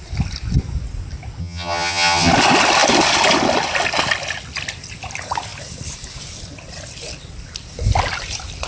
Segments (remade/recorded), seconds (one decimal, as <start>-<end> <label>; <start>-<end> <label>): 0.0-1.4 recorded; 1.4-2.3 remade; 2.3-8.7 recorded